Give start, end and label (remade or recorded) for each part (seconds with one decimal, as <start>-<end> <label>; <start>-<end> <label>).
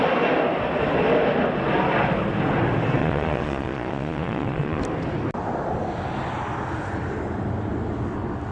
0.0-3.0 recorded; 3.0-4.8 remade; 4.8-8.5 recorded